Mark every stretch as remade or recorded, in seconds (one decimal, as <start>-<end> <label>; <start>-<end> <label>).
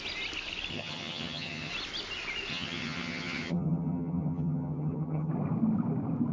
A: 0.0-0.7 recorded; 0.7-1.7 remade; 1.7-2.5 recorded; 2.5-5.3 remade; 5.3-6.3 recorded